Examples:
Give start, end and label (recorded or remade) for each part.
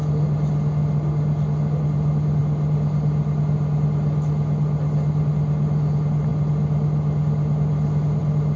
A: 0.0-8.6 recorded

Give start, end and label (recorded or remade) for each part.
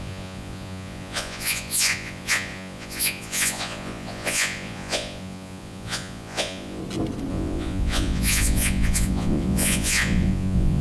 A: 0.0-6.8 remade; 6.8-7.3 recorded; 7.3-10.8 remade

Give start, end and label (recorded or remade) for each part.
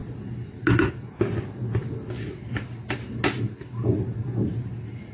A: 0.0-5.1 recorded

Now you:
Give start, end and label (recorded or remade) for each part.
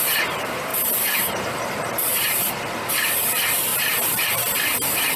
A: 0.0-0.7 remade; 0.7-2.9 recorded; 2.9-3.7 remade; 3.7-4.3 recorded; 4.3-5.2 remade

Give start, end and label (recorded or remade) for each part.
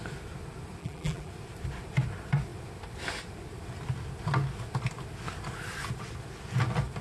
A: 0.0-0.8 recorded; 0.8-1.3 remade; 1.3-7.0 recorded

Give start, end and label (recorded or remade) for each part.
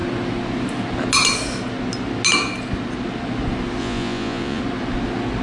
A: 0.0-3.8 recorded; 3.8-4.6 remade; 4.6-5.4 recorded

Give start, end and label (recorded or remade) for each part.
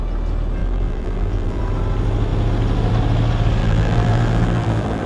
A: 0.0-0.6 recorded; 0.6-1.6 remade; 1.6-3.6 recorded; 3.6-5.1 remade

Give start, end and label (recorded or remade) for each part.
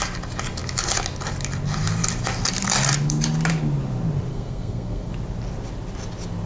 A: 0.0-4.3 recorded; 4.3-5.1 remade; 5.1-6.5 recorded